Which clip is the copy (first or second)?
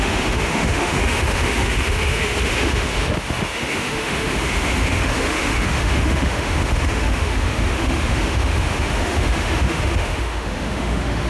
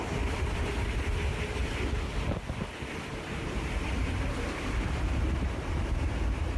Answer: first